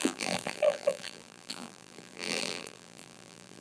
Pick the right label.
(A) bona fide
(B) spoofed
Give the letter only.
B